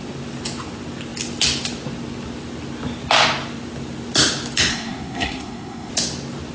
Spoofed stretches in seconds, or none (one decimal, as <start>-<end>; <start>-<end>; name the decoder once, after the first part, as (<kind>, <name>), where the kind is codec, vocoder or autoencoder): 4.7-5.9 (codec, SNAC)